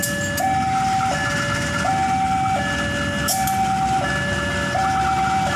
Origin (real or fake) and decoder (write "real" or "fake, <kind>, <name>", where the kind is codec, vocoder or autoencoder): real